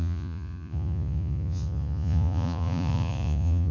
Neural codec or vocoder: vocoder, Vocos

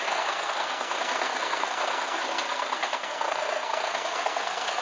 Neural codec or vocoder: codec, SNAC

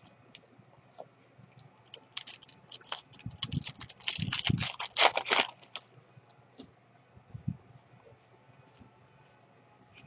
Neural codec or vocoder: none